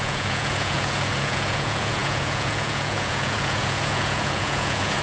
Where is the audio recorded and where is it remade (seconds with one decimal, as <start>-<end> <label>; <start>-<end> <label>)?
0.0-5.0 remade

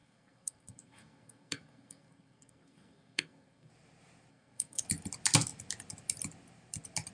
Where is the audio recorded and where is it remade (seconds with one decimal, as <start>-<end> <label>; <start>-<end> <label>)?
0.0-3.7 remade; 3.7-4.3 recorded; 4.3-4.8 remade; 4.8-7.1 recorded

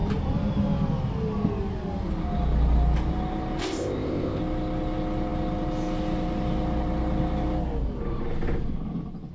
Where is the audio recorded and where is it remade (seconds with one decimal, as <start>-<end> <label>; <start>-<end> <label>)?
0.0-3.6 recorded; 3.6-4.4 remade; 4.4-9.3 recorded

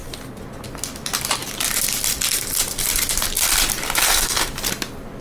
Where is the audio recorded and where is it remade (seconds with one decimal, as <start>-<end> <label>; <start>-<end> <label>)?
0.0-4.0 recorded; 4.0-4.5 remade; 4.5-5.2 recorded

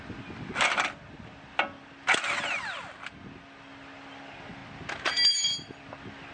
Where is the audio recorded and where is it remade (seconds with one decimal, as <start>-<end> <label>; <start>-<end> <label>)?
0.0-6.3 recorded

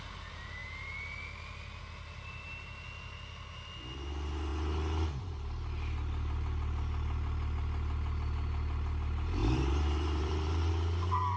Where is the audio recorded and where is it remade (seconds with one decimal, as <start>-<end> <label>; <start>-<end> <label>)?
0.0-9.4 recorded; 9.4-10.7 remade; 10.7-11.4 recorded

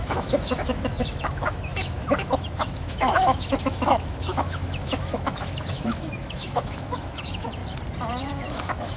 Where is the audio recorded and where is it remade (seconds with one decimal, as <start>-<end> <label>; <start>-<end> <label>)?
0.0-7.6 remade; 7.6-8.1 recorded; 8.1-9.0 remade